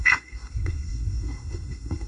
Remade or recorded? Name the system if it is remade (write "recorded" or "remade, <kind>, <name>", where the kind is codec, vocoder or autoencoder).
remade, codec, SNAC